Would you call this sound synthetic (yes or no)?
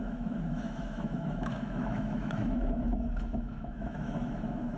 yes